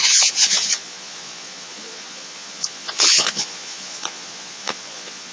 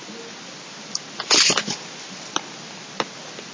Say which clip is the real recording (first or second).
second